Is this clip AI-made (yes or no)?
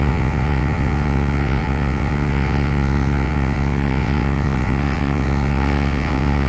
yes